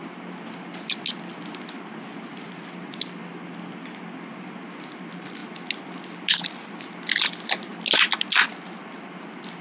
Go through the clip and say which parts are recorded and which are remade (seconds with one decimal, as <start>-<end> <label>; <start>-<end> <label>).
0.0-9.6 recorded

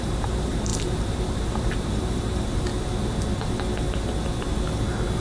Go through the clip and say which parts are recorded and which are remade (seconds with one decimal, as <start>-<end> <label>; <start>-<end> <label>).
0.0-2.7 remade; 2.7-5.2 recorded